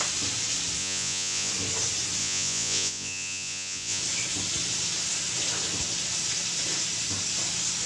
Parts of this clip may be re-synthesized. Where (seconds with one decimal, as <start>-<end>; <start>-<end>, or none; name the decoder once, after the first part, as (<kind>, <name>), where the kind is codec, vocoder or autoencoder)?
0.8-1.5 (vocoder, Vocos); 2.2-4.0

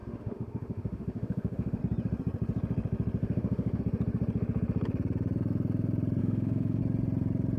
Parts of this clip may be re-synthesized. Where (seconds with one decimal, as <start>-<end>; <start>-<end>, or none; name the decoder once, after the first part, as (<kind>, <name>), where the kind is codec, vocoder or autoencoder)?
0.0-1.8 (autoencoder, DAC-VAE); 3.2-3.8; 6.2-6.8

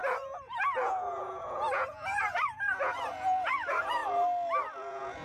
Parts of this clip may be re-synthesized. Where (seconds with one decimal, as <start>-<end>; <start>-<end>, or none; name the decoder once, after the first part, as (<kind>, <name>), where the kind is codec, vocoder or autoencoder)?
0.0-4.0 (vocoder, Vocos); 4.7-5.2